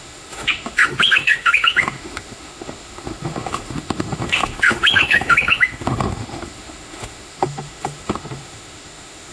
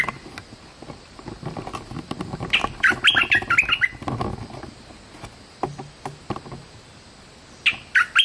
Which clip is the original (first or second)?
second